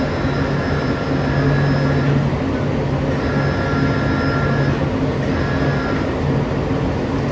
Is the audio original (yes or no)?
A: yes